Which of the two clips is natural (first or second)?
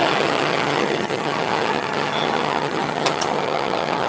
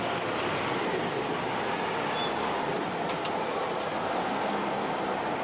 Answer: second